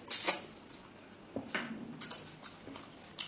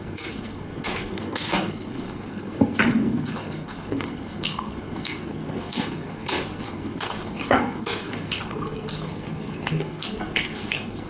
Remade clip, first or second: second